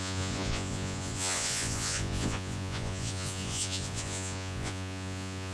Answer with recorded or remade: remade